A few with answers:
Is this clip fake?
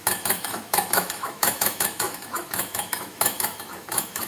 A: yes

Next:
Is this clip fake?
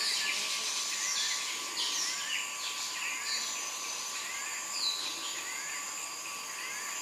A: no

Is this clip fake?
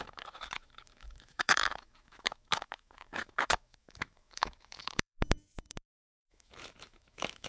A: yes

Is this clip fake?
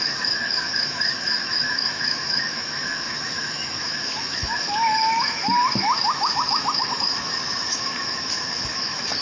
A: yes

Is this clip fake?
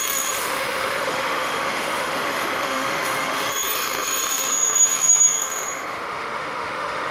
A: yes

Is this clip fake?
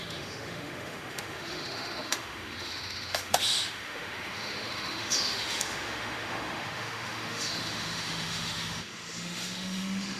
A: yes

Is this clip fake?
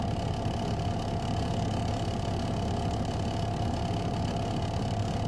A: no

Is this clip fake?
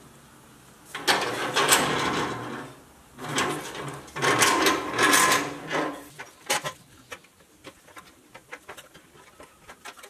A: no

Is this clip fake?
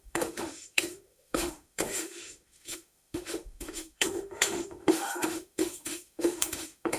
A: yes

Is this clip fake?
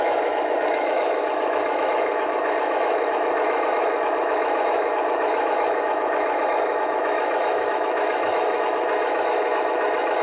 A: yes